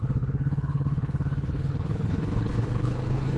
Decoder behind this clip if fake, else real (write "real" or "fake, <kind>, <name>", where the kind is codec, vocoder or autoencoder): fake, codec, HILCodec